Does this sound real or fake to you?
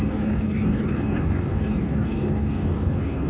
fake